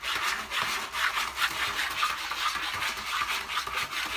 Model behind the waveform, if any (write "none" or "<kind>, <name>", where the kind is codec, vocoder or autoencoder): none